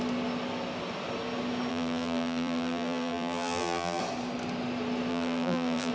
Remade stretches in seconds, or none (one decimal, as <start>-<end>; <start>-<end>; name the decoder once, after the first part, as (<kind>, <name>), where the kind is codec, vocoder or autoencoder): 1.7-4.0 (vocoder, BigVGAN v2); 5.1-5.9